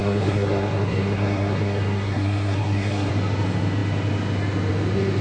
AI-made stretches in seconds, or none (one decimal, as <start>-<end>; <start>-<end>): 0.0-3.1